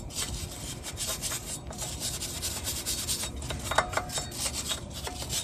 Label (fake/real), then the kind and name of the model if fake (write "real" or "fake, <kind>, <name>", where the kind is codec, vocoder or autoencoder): real